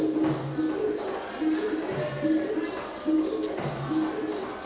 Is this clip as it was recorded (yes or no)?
yes